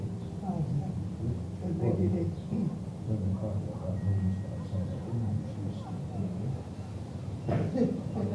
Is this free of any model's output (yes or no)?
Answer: yes